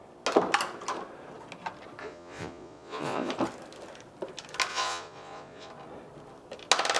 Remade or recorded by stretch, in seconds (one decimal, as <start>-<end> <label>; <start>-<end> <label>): 0.0-2.0 recorded; 2.0-3.3 remade; 3.3-4.7 recorded; 4.7-5.7 remade; 5.7-7.0 recorded